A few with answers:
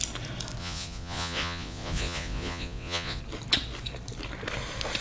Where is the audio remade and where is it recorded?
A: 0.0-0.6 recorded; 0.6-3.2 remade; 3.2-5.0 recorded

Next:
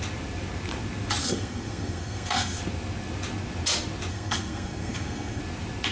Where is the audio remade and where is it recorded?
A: 0.0-1.2 recorded; 1.2-2.6 remade; 2.6-4.1 recorded; 4.1-5.4 remade; 5.4-5.9 recorded

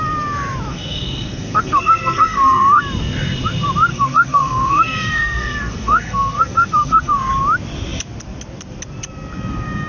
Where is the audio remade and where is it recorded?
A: 0.0-0.7 recorded; 0.7-2.8 remade; 2.8-3.9 recorded; 3.9-7.3 remade; 7.3-9.9 recorded

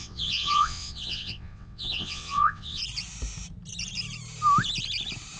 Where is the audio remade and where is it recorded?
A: 0.0-2.8 remade; 2.8-5.4 recorded

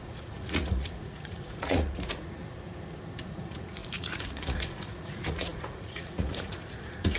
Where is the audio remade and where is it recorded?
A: 0.0-2.4 remade; 2.4-3.2 recorded; 3.2-7.2 remade

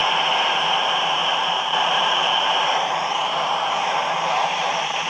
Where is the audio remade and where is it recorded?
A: 0.0-0.5 recorded; 0.5-5.1 remade